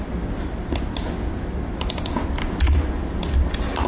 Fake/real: real